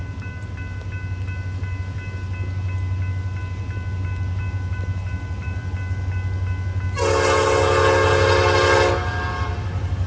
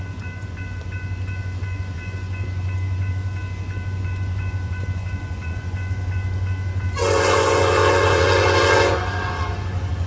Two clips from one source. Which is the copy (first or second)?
second